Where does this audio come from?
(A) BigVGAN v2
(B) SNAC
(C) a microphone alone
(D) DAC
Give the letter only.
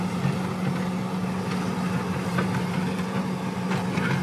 C